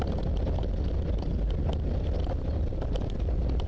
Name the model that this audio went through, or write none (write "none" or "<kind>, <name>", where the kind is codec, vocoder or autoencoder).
none